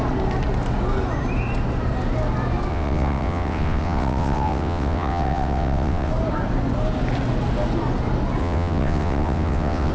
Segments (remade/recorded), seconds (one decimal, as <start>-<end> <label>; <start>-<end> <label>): 0.0-2.7 recorded; 2.7-6.1 remade; 6.1-8.4 recorded; 8.4-9.9 remade